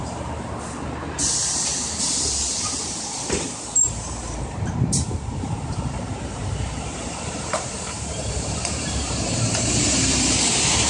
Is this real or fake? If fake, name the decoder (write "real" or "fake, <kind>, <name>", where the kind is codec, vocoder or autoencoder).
fake, vocoder, BigVGAN v2